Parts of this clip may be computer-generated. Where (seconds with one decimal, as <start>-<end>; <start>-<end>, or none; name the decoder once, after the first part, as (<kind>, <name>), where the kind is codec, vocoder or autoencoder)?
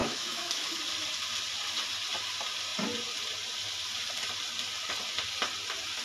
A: 0.0-0.8 (autoencoder, DAC-VAE)